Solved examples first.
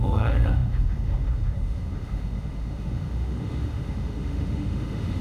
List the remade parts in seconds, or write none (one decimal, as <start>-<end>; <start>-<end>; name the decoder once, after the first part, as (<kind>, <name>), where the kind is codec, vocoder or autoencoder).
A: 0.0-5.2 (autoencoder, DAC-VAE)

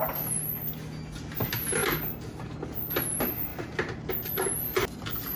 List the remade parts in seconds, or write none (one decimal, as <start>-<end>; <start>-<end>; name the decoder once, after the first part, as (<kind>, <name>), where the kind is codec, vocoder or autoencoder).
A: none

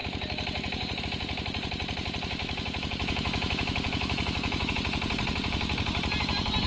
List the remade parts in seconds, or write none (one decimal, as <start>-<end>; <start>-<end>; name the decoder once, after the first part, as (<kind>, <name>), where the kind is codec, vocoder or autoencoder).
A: 2.4-4.7 (autoencoder, DAC-VAE)

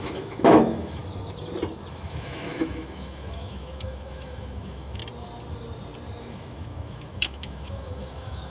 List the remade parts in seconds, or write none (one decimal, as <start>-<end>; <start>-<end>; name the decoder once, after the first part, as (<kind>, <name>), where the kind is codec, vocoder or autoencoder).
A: 0.0-1.0 (autoencoder, DAC-VAE); 1.9-5.0; 6.2-8.5

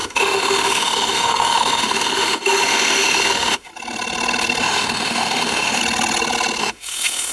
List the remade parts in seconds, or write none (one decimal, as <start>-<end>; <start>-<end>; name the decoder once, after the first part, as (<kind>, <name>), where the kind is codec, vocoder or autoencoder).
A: 0.0-3.7 (autoencoder, DAC-VAE); 4.6-5.8; 6.6-7.3